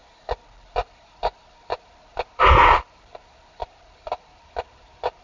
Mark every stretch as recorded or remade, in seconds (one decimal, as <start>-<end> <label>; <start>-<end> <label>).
0.0-2.7 recorded; 2.7-5.2 remade

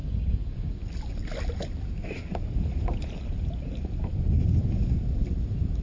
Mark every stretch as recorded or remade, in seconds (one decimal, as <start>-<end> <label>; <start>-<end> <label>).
0.0-0.7 remade; 0.7-5.8 recorded

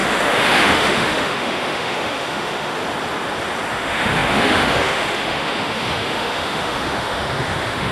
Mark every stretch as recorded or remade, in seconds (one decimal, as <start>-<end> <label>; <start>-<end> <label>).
0.0-2.8 remade; 2.8-3.7 recorded; 3.7-7.9 remade

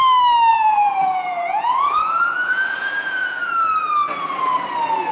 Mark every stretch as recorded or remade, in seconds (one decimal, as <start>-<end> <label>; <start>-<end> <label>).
0.0-0.5 recorded; 0.5-3.5 remade; 3.5-5.1 recorded

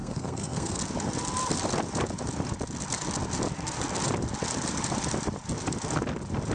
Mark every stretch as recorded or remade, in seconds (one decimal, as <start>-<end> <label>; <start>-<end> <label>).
0.0-0.8 remade; 0.8-6.5 recorded

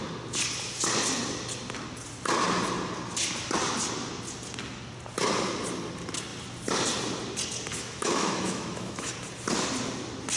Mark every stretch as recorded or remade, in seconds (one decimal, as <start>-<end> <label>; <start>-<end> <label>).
0.0-7.7 recorded; 7.7-9.1 remade; 9.1-10.4 recorded

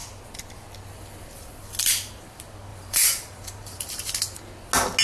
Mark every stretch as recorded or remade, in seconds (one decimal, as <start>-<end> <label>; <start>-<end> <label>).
0.0-2.7 recorded; 2.7-4.0 remade; 4.0-5.0 recorded

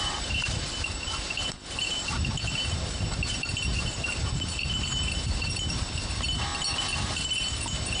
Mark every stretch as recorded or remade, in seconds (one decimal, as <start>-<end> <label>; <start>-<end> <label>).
0.0-8.0 remade